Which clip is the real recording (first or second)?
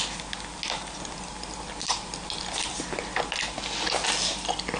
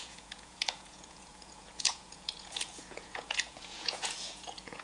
first